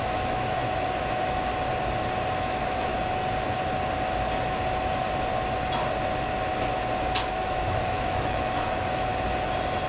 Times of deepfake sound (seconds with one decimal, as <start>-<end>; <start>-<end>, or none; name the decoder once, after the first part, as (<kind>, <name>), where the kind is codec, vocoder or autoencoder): 0.0-0.6 (autoencoder, DAC-VAE); 1.1-1.5; 2.3-2.9; 7.3-9.1